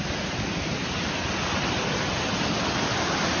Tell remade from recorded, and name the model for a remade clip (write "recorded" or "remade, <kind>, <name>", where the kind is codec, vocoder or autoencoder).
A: recorded